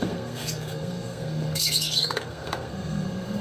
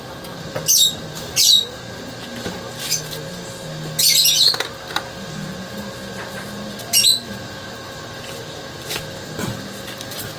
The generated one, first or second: first